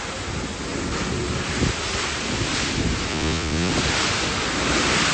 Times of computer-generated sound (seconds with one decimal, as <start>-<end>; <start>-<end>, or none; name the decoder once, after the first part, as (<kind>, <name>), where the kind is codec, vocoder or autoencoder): 3.1-3.7 (vocoder, Vocos)